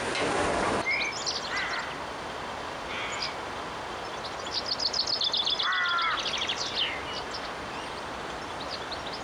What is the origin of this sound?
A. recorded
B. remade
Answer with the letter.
A